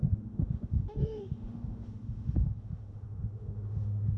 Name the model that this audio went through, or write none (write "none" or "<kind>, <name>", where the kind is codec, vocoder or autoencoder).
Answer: autoencoder, DAC-VAE